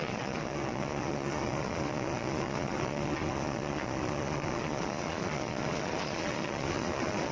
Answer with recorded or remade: remade